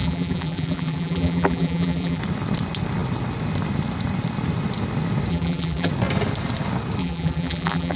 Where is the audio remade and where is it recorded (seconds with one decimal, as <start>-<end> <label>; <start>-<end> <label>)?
0.0-2.2 remade; 2.2-5.3 recorded; 5.3-5.9 remade; 5.9-7.0 recorded; 7.0-8.0 remade